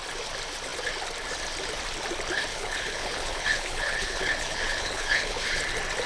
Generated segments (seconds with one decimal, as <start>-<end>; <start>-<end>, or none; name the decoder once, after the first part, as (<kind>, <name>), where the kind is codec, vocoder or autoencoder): 2.5-5.6 (codec, HILCodec)